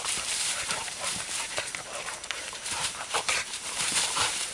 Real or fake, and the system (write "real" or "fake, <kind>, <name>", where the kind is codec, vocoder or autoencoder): fake, vocoder, BigVGAN v2